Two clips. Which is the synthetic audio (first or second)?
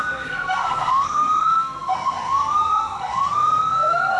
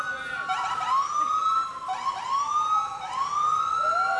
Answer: first